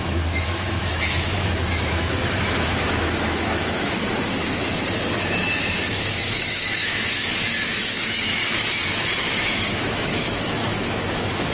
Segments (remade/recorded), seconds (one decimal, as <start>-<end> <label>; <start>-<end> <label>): 0.0-4.0 remade; 4.0-6.0 recorded; 6.0-8.4 remade; 8.4-9.2 recorded; 9.2-11.5 remade